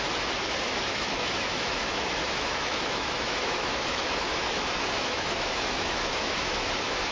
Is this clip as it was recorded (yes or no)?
no